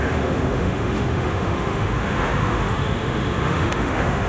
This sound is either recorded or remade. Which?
remade